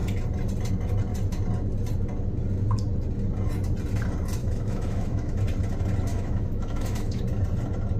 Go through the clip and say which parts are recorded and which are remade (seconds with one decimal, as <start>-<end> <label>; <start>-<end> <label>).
0.0-4.4 recorded; 4.4-5.4 remade; 5.4-6.1 recorded; 6.1-7.2 remade; 7.2-8.0 recorded